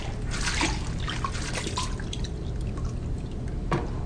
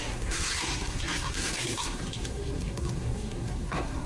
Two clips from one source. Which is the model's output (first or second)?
second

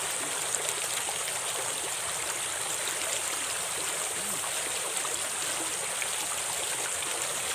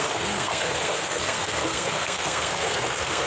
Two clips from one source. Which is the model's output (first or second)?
second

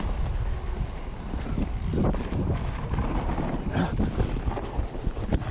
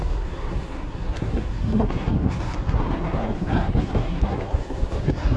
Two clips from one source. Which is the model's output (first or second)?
second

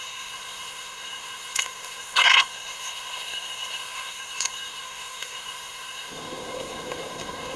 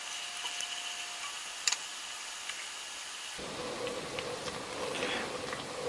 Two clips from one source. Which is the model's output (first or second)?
first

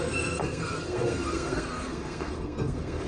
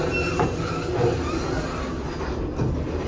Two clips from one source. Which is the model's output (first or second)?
first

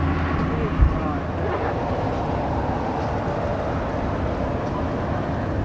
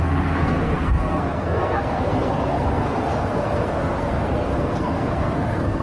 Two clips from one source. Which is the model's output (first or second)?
second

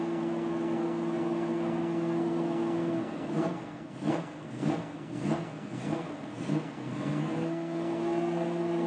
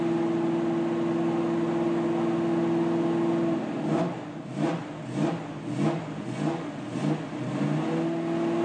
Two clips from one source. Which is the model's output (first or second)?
first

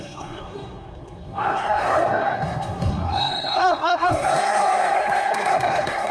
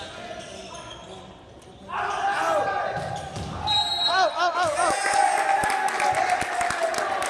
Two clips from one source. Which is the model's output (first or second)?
first